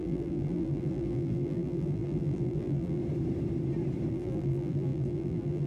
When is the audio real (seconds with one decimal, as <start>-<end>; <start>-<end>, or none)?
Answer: 3.0-4.1